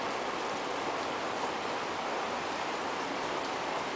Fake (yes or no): no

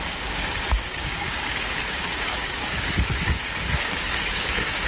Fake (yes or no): yes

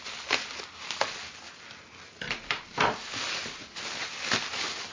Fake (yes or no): no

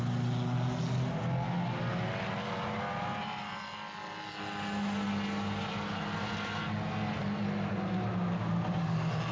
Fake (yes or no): no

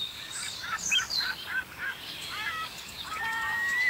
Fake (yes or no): yes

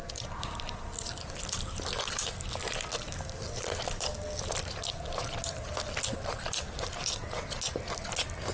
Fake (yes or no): no